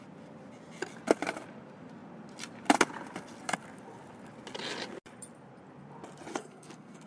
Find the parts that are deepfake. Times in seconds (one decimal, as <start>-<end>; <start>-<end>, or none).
6.3-7.1